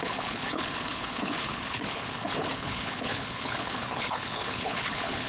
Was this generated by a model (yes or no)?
yes